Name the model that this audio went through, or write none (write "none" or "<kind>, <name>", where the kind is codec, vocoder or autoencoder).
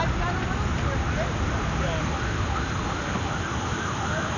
none